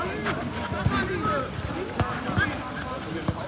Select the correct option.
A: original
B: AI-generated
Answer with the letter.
A